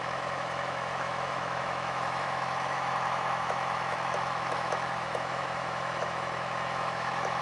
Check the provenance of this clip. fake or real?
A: fake